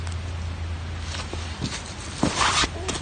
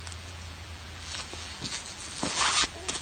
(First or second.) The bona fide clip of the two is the first